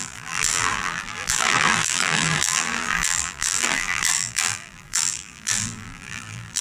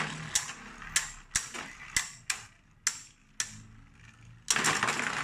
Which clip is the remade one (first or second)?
first